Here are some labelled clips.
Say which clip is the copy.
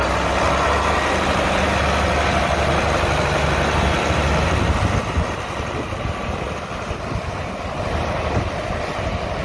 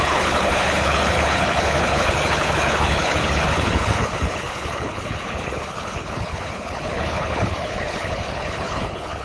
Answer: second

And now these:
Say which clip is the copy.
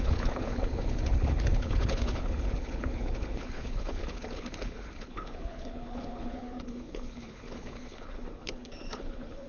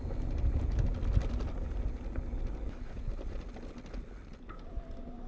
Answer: first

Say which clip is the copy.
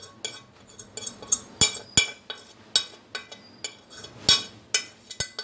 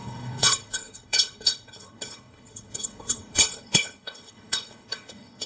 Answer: second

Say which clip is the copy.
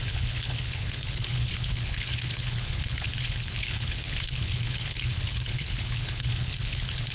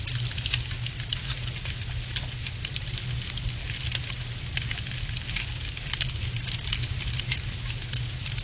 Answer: first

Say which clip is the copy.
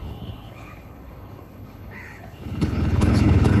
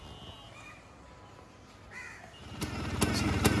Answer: first